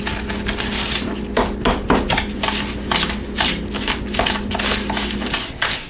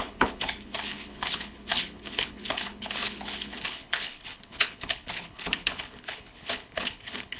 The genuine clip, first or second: first